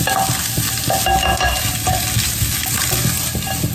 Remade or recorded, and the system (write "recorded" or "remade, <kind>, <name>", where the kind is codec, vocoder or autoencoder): recorded